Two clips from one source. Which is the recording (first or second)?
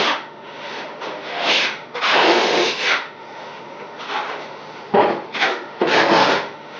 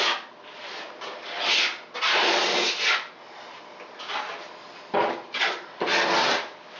second